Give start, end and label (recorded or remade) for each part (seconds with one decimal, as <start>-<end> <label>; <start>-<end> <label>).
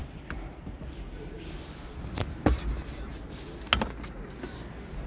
0.0-5.1 recorded